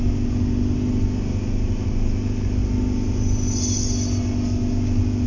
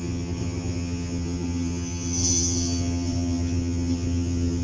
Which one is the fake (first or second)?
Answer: second